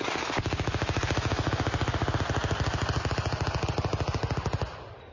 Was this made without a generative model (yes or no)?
yes